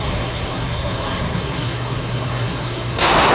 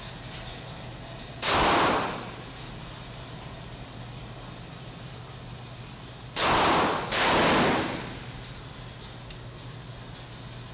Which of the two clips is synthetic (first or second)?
first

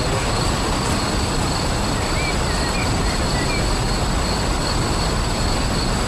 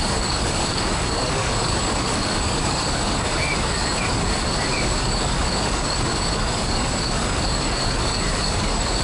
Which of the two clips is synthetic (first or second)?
second